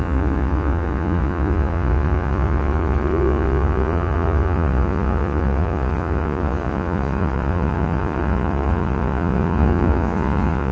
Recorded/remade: remade